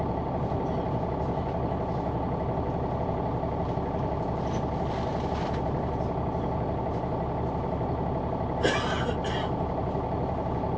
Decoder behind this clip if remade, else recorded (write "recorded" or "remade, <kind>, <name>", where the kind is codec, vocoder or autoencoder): recorded